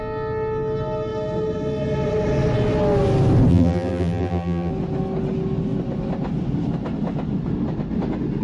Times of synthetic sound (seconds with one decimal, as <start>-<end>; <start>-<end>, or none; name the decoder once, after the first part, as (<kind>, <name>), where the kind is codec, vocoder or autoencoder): 3.5-4.7 (vocoder, BigVGAN v2)